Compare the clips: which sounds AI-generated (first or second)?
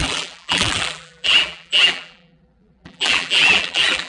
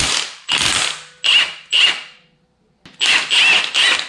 first